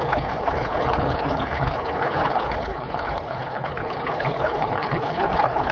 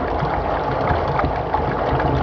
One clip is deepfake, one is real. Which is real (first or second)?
second